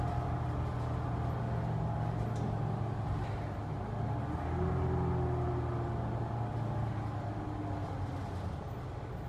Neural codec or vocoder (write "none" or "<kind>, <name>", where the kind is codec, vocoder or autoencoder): none